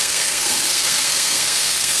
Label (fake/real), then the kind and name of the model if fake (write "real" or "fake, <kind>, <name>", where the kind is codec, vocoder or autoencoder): fake, codec, SNAC